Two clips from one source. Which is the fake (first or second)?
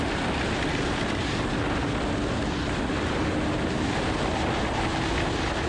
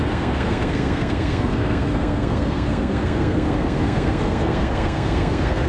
second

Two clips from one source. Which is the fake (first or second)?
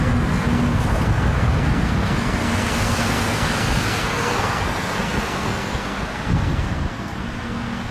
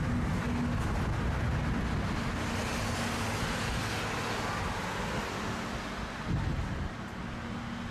first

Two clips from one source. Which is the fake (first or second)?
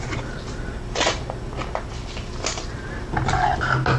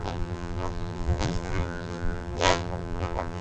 second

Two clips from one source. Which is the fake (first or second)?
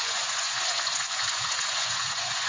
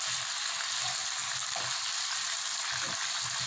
first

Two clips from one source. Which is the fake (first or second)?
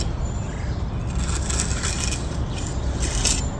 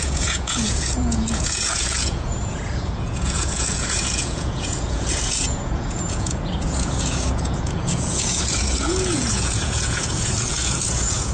second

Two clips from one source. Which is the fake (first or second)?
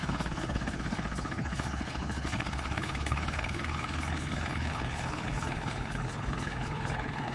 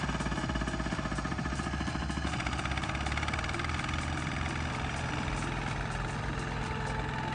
first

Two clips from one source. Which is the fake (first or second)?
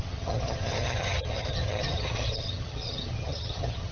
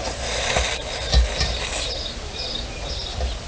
first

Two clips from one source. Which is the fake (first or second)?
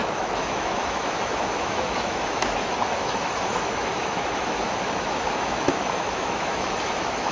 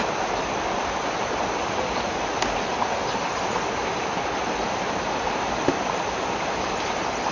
first